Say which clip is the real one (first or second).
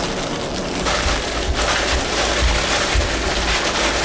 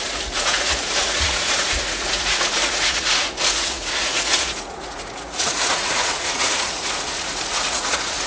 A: first